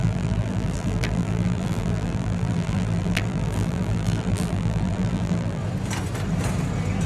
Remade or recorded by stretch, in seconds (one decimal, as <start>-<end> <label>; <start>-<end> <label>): 0.0-5.6 remade; 5.6-7.1 recorded